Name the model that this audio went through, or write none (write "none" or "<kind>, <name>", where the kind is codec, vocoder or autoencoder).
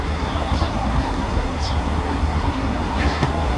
codec, SNAC